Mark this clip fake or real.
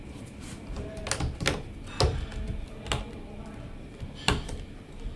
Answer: real